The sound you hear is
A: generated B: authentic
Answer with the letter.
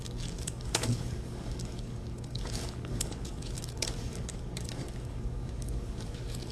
A